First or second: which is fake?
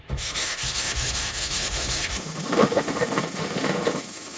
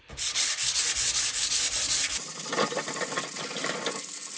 first